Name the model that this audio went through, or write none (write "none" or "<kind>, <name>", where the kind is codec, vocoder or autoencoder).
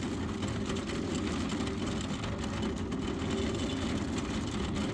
none